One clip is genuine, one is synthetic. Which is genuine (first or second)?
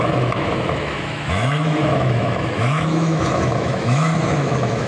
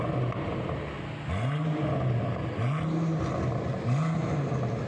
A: second